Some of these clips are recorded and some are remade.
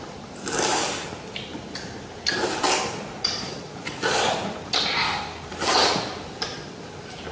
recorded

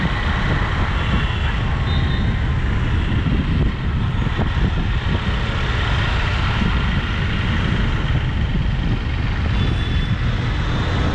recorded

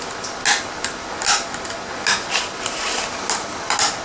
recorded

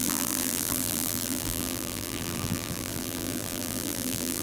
remade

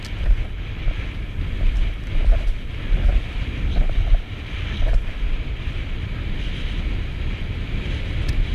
recorded